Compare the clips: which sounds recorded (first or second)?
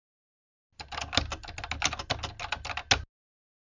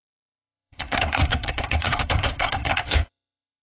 first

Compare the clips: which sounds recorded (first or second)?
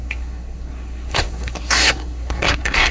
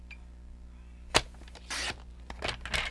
second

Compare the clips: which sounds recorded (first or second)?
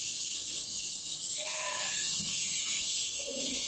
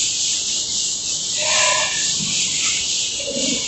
second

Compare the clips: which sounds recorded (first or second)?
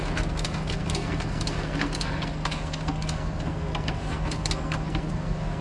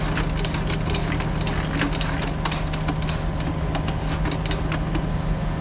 second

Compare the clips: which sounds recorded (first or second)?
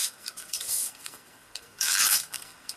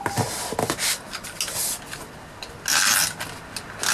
second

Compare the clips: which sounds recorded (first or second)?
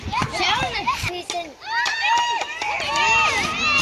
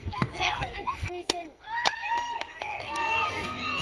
first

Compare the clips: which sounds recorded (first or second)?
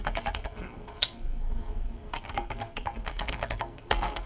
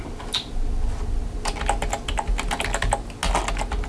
second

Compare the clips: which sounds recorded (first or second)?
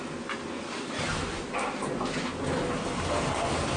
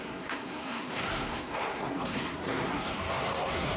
first